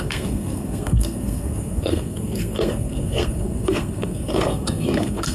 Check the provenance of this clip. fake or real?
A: fake